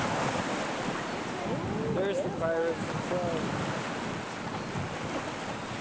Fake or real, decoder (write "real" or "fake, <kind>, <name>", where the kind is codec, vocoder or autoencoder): real